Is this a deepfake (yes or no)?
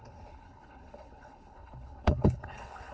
yes